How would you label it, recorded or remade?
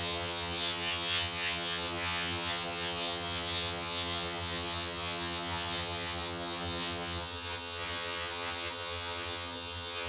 remade